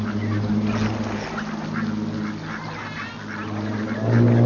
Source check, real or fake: real